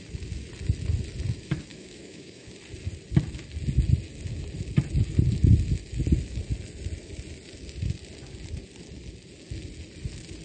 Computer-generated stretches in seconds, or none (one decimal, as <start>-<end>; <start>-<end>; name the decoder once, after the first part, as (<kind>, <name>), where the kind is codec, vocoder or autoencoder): 1.7-2.5 (autoencoder, DAC-VAE)